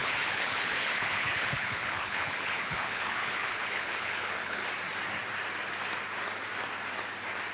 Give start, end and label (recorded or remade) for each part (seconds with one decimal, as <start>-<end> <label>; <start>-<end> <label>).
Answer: 0.0-4.6 remade; 4.6-7.5 recorded